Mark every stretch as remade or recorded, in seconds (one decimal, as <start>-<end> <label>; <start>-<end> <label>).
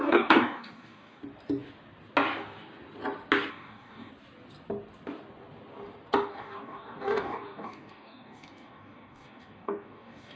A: 0.0-1.2 remade; 1.2-3.5 recorded; 3.5-4.1 remade; 4.1-6.3 recorded; 6.3-10.4 remade